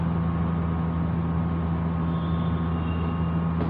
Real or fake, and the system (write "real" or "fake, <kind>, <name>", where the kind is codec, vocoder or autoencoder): real